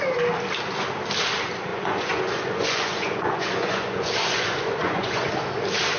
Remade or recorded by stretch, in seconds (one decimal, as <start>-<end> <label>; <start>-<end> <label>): 0.0-1.7 recorded; 1.7-5.3 remade; 5.3-6.0 recorded